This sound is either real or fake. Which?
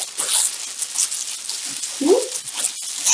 real